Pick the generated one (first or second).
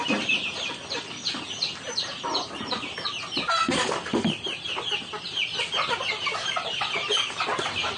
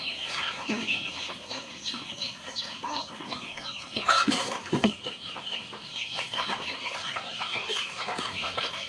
second